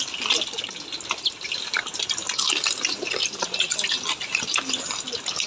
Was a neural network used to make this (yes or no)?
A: no